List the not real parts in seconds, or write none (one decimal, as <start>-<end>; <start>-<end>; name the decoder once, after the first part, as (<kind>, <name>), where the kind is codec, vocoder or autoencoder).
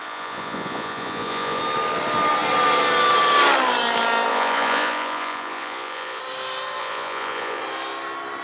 0.0-1.6 (vocoder, Vocos); 4.3-6.2; 6.8-7.6